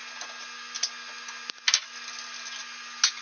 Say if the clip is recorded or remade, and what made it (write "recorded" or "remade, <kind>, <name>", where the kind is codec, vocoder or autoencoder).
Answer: recorded